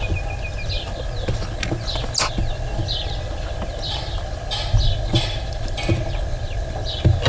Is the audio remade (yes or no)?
no